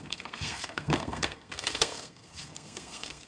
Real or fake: fake